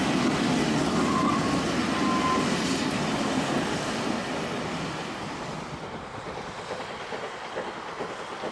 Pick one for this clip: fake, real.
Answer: real